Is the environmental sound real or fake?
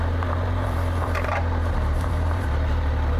fake